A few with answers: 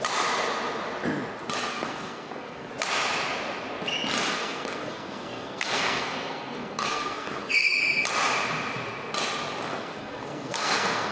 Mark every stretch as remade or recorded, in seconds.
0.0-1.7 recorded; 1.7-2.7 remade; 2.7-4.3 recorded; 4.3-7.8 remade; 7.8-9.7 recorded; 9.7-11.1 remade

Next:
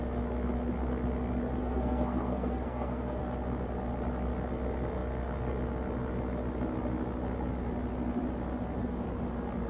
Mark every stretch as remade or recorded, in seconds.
0.0-1.6 recorded; 1.6-3.2 remade; 3.2-9.7 recorded

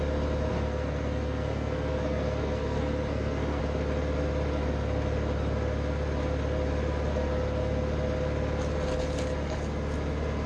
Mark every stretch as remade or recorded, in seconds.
0.0-0.5 recorded; 0.5-3.6 remade; 3.6-10.5 recorded

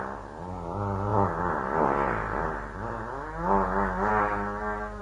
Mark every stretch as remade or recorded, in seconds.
0.0-5.0 recorded

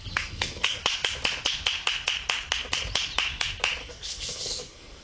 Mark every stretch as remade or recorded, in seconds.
0.0-0.8 remade; 0.8-3.8 recorded; 3.8-5.0 remade

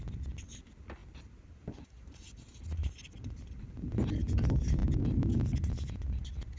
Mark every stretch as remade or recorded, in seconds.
0.0-6.6 recorded

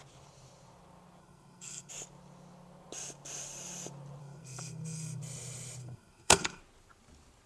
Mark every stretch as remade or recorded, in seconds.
0.0-1.2 recorded; 1.2-1.9 remade; 1.9-4.2 recorded; 4.2-5.2 remade; 5.2-5.8 recorded; 5.8-6.6 remade; 6.6-7.5 recorded

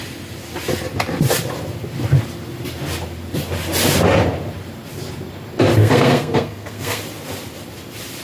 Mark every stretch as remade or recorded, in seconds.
0.0-5.8 recorded; 5.8-7.0 remade; 7.0-8.2 recorded